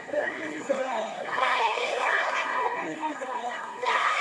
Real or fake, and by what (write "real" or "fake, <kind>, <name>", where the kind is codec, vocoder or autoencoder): fake, codec, SNAC